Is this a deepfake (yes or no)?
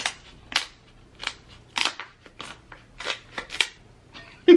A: no